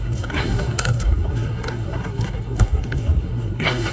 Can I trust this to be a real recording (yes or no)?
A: no